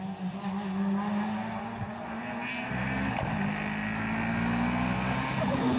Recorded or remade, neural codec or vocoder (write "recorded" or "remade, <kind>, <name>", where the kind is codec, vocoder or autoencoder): recorded